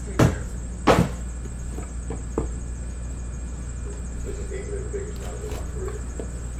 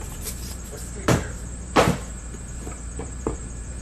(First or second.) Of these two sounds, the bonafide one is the first